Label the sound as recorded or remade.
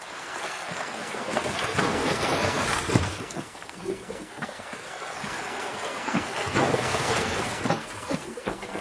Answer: remade